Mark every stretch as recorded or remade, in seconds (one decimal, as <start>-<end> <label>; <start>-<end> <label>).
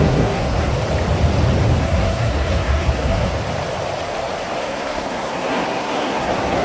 0.0-0.7 remade; 0.7-1.8 recorded; 1.8-3.3 remade; 3.3-4.6 recorded; 4.6-6.6 remade